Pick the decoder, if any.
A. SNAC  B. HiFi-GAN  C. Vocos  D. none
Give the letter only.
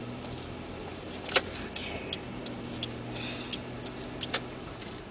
D